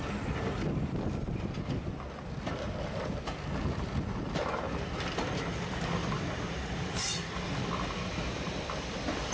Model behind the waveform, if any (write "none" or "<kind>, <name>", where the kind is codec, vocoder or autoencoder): none